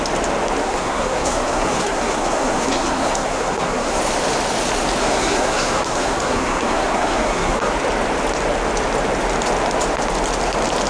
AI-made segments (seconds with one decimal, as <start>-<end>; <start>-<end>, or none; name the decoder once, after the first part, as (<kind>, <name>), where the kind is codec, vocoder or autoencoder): 0.6-4.0 (codec, SNAC); 5.0-7.7